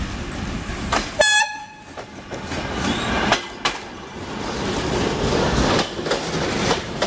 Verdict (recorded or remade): recorded